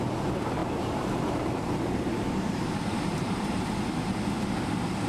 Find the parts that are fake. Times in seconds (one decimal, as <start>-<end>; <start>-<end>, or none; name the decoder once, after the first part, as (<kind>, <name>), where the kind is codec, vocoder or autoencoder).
0.6-3.7 (vocoder, BigVGAN v2)